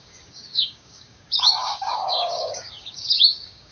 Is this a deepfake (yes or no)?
yes